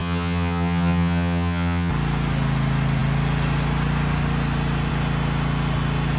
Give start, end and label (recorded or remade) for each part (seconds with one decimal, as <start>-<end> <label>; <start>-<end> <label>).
0.0-1.9 remade; 1.9-6.2 recorded